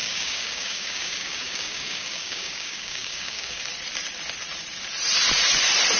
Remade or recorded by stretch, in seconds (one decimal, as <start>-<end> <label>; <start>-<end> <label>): 0.0-3.6 remade; 3.6-6.0 recorded